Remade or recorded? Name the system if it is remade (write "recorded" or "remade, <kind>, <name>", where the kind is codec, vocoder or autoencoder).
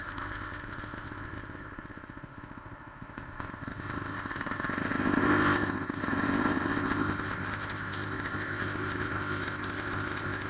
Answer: remade, codec, ZipCodec